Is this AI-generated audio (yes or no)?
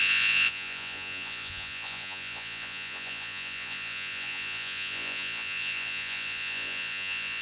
yes